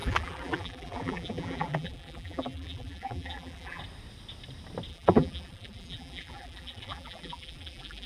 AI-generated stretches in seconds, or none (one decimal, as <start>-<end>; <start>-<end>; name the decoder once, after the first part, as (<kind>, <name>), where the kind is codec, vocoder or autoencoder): 0.0-3.8 (vocoder, BigVGAN v2); 4.9-8.1